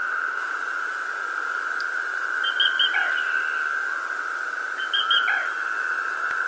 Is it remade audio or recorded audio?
recorded